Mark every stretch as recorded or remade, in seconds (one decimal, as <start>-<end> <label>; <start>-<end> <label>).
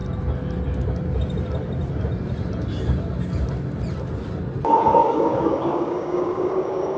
0.0-5.0 recorded; 5.0-7.0 remade